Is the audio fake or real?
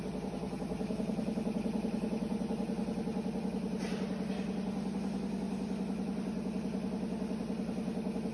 real